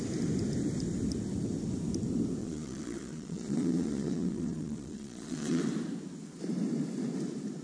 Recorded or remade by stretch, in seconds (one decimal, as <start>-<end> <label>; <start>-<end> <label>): 0.0-2.4 recorded; 2.4-5.6 remade; 5.6-7.6 recorded